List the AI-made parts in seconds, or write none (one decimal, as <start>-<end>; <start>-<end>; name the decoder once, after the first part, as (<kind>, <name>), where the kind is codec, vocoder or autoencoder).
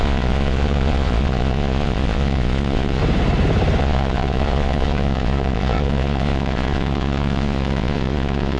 0.0-3.0 (vocoder, Vocos); 3.8-8.6